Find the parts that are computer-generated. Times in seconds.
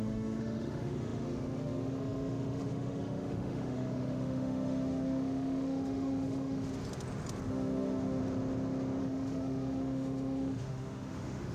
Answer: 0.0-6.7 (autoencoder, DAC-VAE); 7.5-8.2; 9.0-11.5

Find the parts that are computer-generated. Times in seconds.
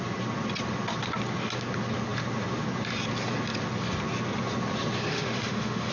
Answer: 5.1-5.9 (autoencoder, DAC-VAE)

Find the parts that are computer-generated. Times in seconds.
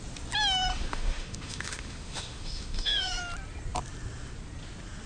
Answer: 0.7-3.2 (autoencoder, DAC-VAE)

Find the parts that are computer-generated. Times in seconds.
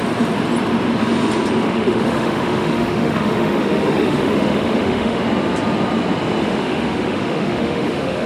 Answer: 1.6-5.2 (autoencoder, DAC-VAE); 6.4-8.3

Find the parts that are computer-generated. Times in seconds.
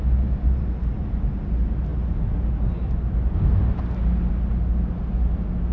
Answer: none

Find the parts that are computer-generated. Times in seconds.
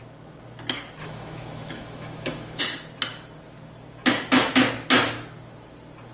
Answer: 1.0-2.6 (autoencoder, DAC-VAE)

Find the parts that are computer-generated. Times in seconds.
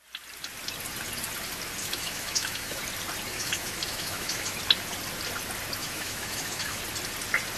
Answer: 1.8-2.8 (autoencoder, DAC-VAE); 3.3-4.6; 5.8-6.8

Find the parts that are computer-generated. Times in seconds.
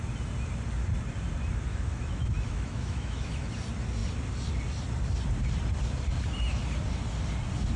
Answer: 1.7-3.5 (autoencoder, DAC-VAE)